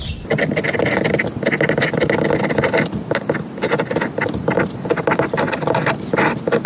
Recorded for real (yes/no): yes